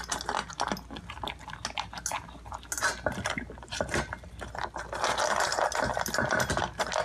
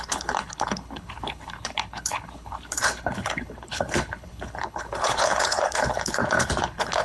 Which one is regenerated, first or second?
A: second